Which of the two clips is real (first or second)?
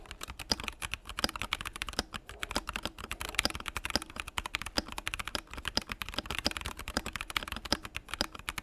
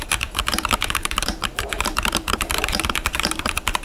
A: first